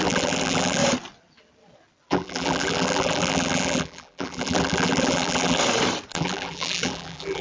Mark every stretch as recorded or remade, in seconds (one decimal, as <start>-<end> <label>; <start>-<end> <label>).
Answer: 0.0-0.8 remade; 0.8-2.1 recorded; 2.1-5.6 remade; 5.6-6.1 recorded; 6.1-7.4 remade